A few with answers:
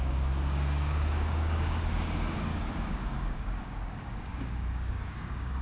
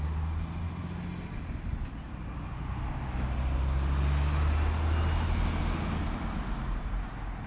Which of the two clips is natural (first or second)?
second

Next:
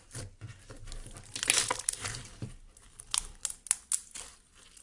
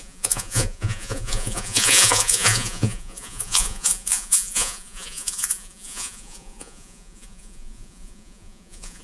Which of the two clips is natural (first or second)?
first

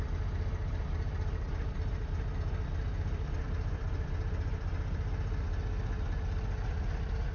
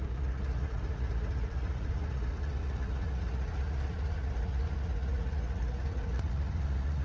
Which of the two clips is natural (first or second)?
first